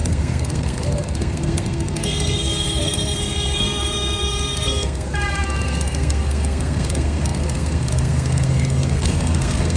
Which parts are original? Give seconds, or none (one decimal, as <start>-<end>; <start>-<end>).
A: none

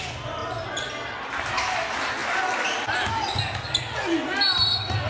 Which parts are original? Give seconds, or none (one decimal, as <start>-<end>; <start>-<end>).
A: 0.0-5.1

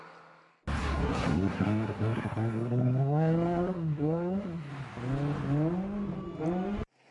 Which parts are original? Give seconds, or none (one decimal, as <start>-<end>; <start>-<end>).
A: 0.0-0.8; 4.7-7.1

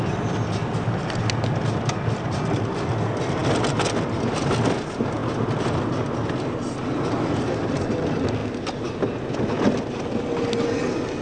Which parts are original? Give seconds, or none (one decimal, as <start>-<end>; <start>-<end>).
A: 0.0-11.2